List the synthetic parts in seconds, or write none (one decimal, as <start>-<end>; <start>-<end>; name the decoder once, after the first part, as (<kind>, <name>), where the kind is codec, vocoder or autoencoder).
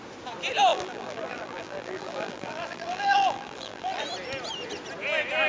0.7-4.0 (vocoder, BigVGAN v2)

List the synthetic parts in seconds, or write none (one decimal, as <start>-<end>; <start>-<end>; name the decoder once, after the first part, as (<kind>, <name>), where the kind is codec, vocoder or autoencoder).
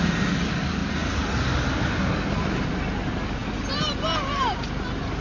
none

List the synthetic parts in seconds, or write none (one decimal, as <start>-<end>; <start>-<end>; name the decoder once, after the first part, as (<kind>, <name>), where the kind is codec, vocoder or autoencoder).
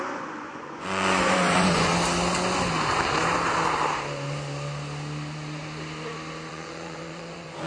0.0-1.9 (vocoder, Vocos); 6.5-7.7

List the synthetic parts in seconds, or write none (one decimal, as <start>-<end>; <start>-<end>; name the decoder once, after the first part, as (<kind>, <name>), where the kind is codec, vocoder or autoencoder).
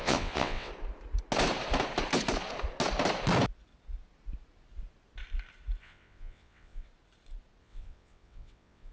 0.0-0.7 (vocoder, WaveNeXt); 5.8-6.9; 7.6-8.9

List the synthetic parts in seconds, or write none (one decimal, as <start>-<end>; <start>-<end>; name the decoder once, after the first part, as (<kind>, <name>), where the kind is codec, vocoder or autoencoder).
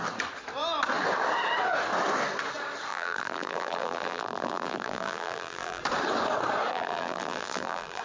2.9-5.8 (vocoder, BigVGAN v2); 6.7-8.0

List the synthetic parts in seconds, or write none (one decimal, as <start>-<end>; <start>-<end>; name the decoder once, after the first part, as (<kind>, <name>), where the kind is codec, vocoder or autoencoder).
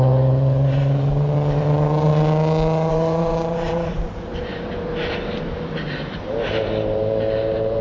0.0-2.1 (vocoder, BigVGAN v2); 2.9-7.8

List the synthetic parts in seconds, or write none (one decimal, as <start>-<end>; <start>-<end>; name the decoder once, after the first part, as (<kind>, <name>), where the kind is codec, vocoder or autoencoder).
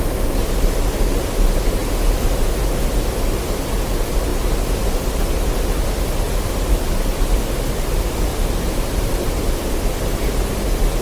1.8-2.4 (vocoder, BigVGAN v2); 8.3-9.3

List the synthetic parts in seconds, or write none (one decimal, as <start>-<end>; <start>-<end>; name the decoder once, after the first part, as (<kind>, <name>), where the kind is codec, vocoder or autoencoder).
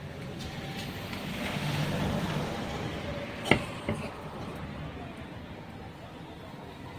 1.3-1.8 (autoencoder, DAC-VAE)